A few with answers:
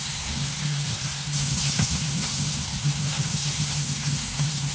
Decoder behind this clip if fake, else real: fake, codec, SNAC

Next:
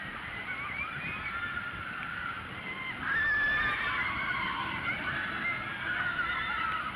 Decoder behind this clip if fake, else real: real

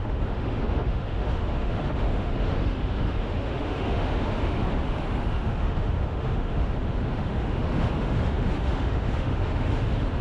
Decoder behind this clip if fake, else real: fake, autoencoder, DAC-VAE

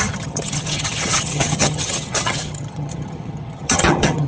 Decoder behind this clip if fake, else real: fake, vocoder, HiFi-GAN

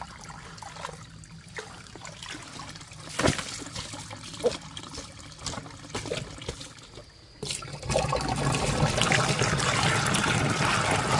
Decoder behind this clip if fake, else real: real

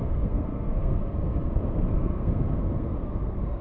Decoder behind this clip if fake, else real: fake, codec, SNAC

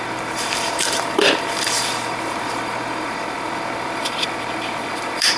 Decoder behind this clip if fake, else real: fake, vocoder, BigVGAN v2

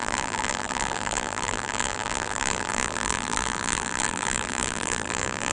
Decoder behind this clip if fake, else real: fake, vocoder, BigVGAN v2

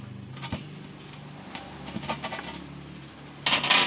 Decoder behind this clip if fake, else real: real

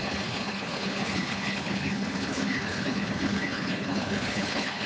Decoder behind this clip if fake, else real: fake, codec, HILCodec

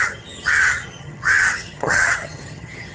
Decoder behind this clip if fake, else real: fake, vocoder, HiFi-GAN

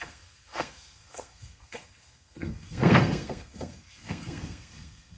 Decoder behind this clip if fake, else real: fake, codec, SNAC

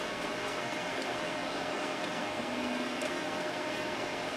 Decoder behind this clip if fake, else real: fake, codec, SNAC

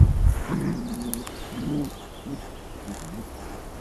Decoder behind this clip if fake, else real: real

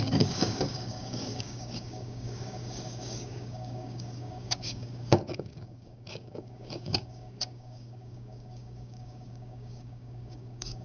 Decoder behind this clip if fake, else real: fake, codec, DAC